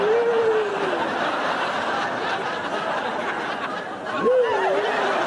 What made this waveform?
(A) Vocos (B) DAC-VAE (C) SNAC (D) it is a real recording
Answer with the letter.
D